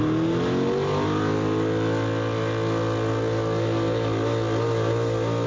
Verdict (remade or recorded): recorded